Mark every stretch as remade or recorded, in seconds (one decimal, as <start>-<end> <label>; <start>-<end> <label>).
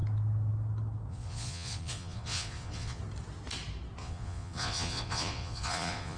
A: 0.0-1.1 recorded; 1.1-3.0 remade; 3.0-4.0 recorded; 4.0-6.2 remade